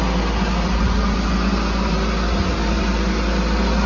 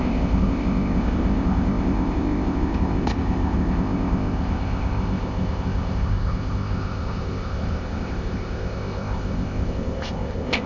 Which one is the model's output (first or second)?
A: second